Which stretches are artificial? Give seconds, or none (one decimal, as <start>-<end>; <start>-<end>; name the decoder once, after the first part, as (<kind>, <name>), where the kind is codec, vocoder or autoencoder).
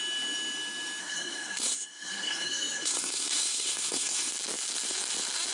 1.0-4.3 (codec, SNAC)